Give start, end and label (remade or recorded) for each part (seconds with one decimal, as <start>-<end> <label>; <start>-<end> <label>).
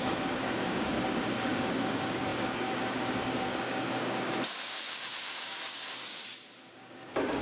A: 0.0-6.2 remade; 6.2-6.8 recorded; 6.8-7.4 remade